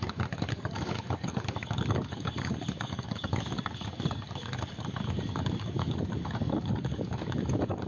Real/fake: fake